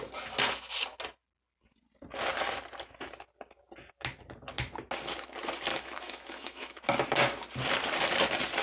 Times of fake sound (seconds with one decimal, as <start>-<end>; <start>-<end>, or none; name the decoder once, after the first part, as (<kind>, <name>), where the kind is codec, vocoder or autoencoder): 5.7-6.8 (autoencoder, DAC-VAE)